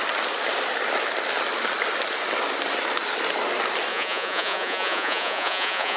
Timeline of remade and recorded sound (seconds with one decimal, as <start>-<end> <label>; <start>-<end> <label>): 0.0-3.9 recorded; 3.9-6.0 remade